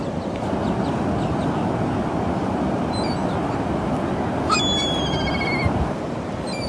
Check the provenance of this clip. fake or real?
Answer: real